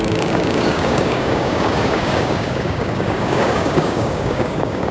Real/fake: fake